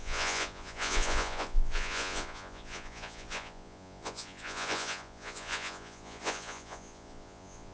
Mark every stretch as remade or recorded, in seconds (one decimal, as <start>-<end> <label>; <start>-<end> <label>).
0.0-7.7 remade